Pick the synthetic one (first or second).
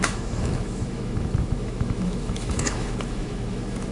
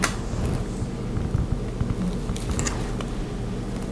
first